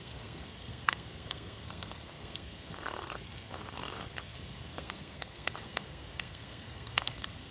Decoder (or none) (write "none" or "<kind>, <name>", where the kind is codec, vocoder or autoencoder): codec, SNAC